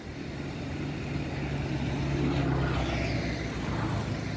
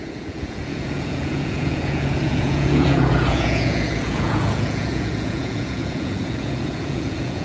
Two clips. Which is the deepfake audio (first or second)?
second